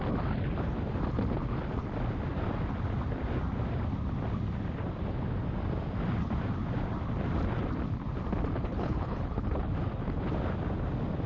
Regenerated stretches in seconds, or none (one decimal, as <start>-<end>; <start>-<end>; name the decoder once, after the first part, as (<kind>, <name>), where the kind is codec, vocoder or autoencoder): 8.7-9.7 (codec, HILCodec)